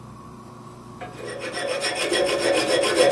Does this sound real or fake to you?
fake